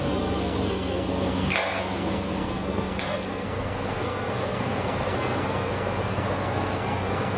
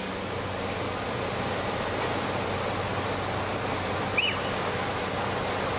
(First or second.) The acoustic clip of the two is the second